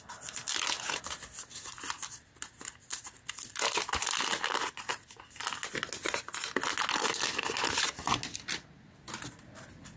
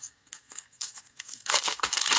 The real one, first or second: first